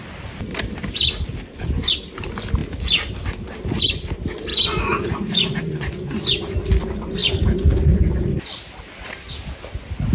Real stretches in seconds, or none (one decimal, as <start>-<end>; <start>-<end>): 0.0-4.5; 6.5-10.1